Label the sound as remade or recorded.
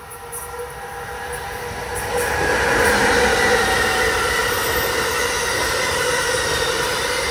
recorded